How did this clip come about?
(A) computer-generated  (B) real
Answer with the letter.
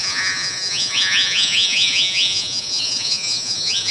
A